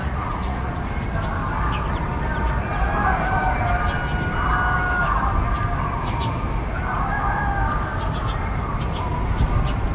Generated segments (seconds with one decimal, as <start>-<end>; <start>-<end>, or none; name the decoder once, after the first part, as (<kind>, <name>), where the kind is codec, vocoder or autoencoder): 0.0-0.7 (vocoder, Vocos)